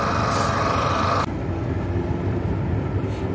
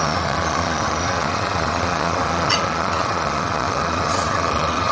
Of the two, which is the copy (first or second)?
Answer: second